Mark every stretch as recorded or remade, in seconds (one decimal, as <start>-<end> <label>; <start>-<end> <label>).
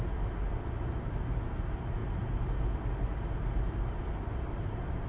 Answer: 0.0-5.1 recorded